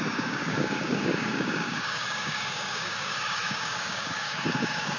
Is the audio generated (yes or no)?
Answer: yes